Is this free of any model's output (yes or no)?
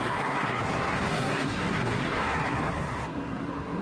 no